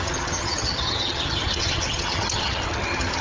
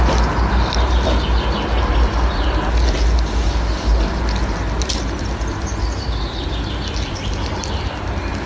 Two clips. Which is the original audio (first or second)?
second